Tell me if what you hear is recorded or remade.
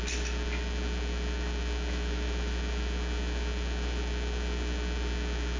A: recorded